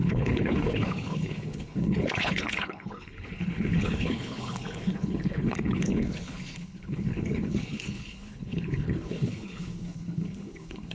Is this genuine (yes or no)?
no